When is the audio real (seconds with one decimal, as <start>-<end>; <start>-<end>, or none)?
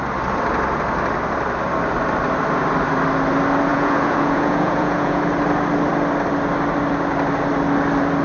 0.0-3.7; 5.2-8.2